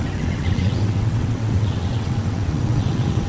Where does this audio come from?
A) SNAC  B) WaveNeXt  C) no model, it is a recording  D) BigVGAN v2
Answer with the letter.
B